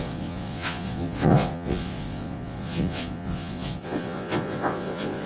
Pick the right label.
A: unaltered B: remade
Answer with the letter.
B